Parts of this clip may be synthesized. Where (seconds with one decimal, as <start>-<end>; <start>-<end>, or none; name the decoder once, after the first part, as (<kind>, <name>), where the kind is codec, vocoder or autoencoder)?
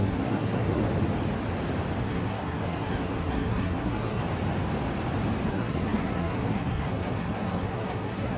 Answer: 0.0-0.8 (codec, SNAC); 2.0-4.2; 5.5-8.4